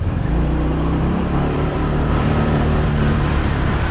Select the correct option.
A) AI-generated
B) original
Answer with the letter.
A